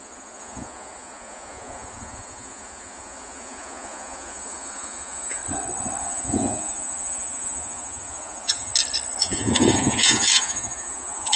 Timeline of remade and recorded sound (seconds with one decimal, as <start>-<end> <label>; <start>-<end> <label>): 0.0-5.4 remade; 5.4-6.0 recorded; 6.0-8.7 remade; 8.7-9.2 recorded; 9.2-11.4 remade